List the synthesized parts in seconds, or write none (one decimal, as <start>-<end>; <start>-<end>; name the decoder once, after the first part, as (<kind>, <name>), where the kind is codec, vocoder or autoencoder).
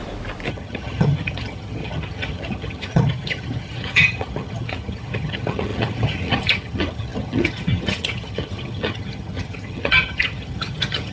0.5-11.1 (vocoder, HiFi-GAN)